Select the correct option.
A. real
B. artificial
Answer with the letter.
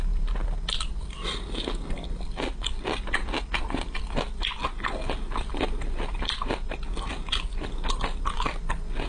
A